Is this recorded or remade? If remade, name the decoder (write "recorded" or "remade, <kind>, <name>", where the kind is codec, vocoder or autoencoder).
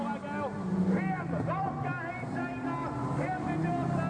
recorded